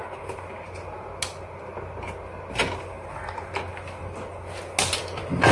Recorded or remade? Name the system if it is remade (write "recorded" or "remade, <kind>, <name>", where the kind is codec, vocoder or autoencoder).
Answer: recorded